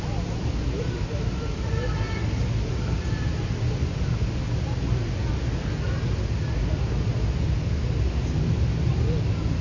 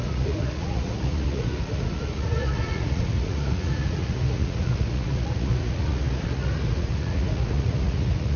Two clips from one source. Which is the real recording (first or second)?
first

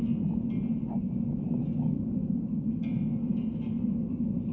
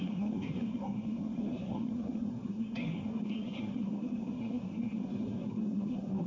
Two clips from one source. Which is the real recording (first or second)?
first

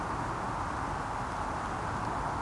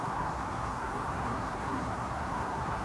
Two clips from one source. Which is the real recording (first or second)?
first